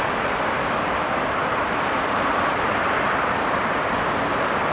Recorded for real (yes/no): no